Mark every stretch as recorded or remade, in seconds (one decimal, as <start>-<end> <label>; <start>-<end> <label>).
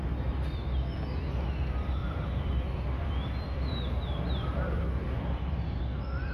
0.0-2.0 recorded; 2.0-5.8 remade; 5.8-6.3 recorded